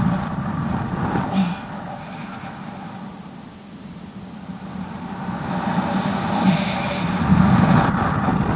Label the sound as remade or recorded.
recorded